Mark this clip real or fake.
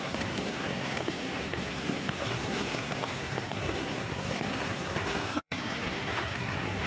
fake